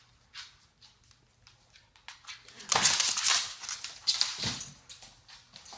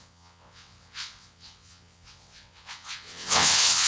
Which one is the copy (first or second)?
second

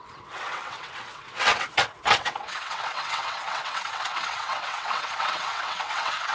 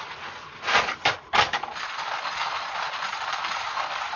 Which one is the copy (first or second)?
first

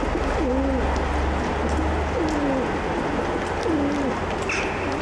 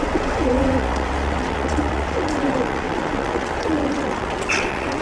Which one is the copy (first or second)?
second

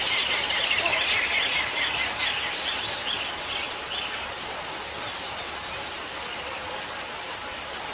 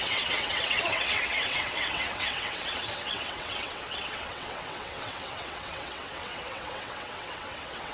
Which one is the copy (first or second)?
second